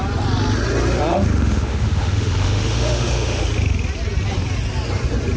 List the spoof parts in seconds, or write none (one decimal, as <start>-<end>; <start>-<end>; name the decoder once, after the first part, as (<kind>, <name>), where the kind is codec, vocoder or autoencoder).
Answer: 1.1-3.4 (autoencoder, DAC-VAE)